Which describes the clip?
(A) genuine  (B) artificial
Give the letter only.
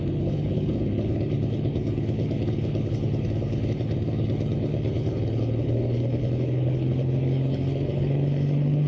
B